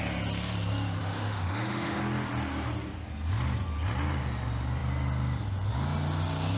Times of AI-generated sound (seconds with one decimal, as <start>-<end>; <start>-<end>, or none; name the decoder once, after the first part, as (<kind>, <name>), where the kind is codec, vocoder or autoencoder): 1.0-2.0 (autoencoder, DAC-VAE)